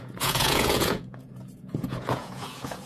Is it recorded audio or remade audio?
remade